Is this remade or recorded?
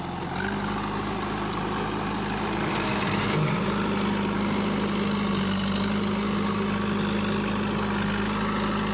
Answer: recorded